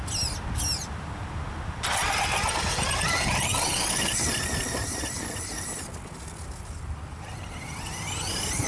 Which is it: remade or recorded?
recorded